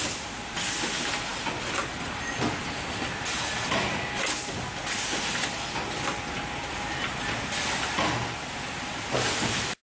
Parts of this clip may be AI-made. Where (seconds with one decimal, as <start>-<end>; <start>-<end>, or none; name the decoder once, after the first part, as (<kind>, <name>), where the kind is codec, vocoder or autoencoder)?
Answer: none